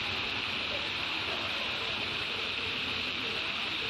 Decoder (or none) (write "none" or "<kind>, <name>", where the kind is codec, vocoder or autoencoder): vocoder, BigVGAN v2